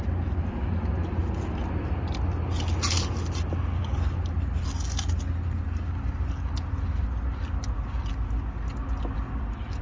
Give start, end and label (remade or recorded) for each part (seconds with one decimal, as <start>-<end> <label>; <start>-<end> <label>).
0.0-9.8 recorded